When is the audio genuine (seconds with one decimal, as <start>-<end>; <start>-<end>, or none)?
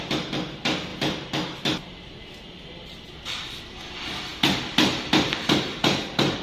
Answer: none